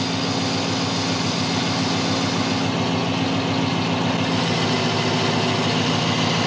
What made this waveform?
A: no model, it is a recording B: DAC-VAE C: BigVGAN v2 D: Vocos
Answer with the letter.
A